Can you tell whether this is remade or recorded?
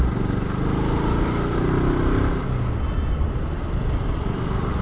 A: recorded